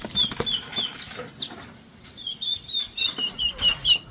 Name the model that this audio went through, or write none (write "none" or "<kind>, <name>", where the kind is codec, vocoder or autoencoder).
none